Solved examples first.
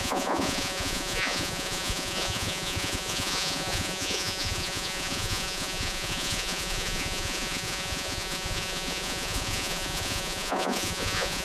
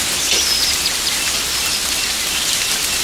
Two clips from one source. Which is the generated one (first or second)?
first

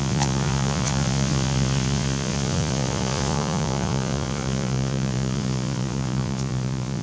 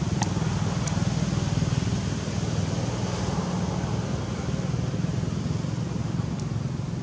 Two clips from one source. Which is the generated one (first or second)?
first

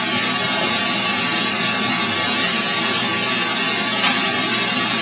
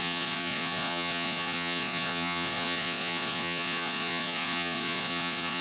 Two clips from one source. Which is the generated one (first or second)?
second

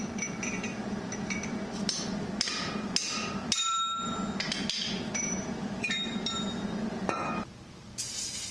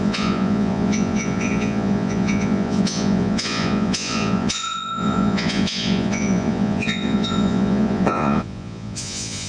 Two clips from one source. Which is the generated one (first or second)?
second